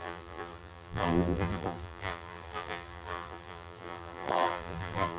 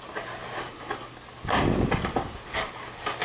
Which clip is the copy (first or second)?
first